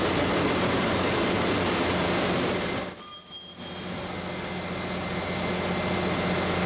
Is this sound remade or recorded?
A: recorded